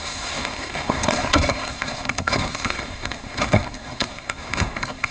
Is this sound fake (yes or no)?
yes